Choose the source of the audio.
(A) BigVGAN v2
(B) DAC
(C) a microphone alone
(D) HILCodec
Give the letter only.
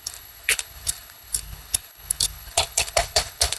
D